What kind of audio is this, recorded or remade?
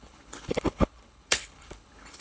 remade